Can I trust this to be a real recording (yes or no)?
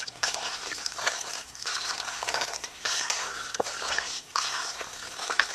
no